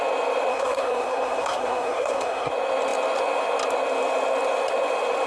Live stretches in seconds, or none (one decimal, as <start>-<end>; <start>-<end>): 0.0-0.5; 2.5-5.3